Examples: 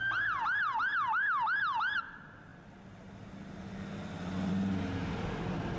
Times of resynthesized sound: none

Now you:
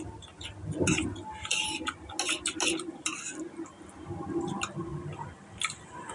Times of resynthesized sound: none

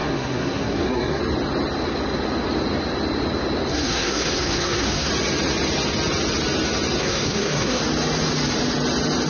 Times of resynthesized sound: 0.0-1.2 (codec, SNAC); 3.7-5.1; 7.0-7.8

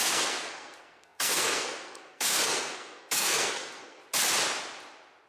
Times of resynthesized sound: 0.0-4.0 (codec, SNAC)

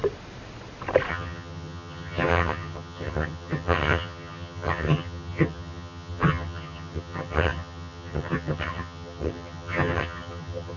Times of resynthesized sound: 1.1-10.8 (vocoder, HiFi-GAN)

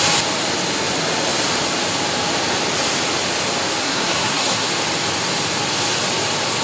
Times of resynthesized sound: 3.8-4.7 (codec, SNAC)

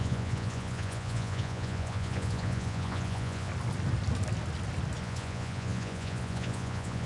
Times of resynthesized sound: 0.0-3.5 (vocoder, Vocos); 5.0-7.1